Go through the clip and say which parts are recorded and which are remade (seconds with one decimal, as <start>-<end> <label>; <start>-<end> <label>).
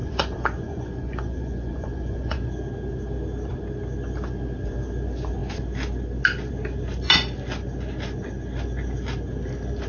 0.0-2.5 remade; 2.5-9.9 recorded